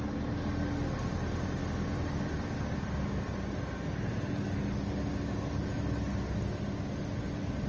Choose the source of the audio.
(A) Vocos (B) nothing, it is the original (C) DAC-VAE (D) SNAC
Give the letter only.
B